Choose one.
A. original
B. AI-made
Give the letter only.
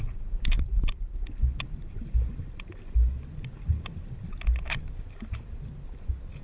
A